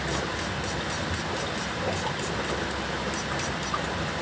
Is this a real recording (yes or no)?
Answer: yes